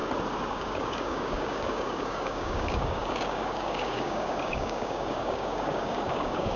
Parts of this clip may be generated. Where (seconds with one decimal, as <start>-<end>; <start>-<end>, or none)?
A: 0.5-6.6